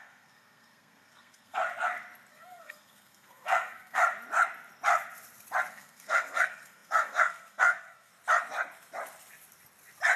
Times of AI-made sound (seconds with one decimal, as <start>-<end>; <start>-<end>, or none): 0.0-1.6; 2.3-4.0; 5.7-8.1